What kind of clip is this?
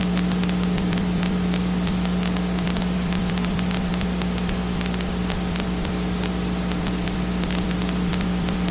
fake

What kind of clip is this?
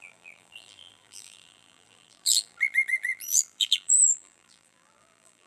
fake